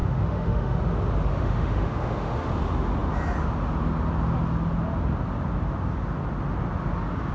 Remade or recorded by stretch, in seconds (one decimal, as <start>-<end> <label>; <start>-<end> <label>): 0.0-0.8 remade; 0.8-1.3 recorded; 1.3-2.5 remade; 2.5-7.3 recorded